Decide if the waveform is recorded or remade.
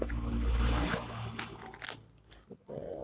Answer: recorded